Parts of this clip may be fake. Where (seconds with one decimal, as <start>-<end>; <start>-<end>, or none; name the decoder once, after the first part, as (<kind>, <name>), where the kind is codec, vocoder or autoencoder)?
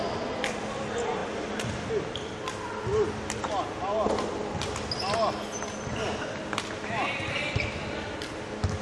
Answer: none